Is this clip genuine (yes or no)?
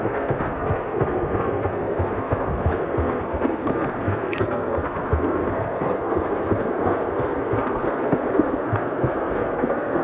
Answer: no